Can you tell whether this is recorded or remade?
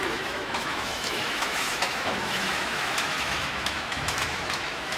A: remade